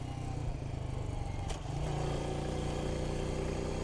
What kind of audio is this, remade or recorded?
recorded